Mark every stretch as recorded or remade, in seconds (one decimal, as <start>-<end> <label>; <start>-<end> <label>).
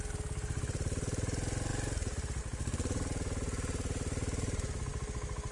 0.0-1.7 recorded; 1.7-2.4 remade; 2.4-5.5 recorded